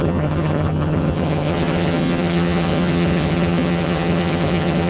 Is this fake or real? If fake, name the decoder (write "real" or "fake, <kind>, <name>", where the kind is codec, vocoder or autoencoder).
fake, vocoder, HiFi-GAN